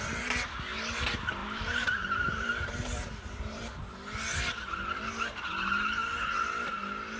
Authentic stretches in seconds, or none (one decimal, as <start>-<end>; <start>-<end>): 0.0-1.4; 3.7-7.2